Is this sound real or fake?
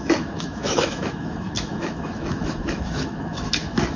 fake